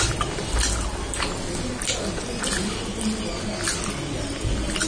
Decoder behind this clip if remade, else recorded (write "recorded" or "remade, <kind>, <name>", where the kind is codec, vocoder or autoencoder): recorded